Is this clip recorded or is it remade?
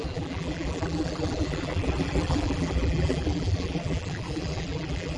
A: remade